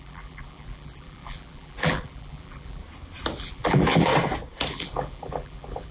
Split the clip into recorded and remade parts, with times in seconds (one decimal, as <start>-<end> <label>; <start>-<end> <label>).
0.0-2.8 remade; 2.8-3.4 recorded; 3.4-4.1 remade; 4.1-4.7 recorded; 4.7-5.9 remade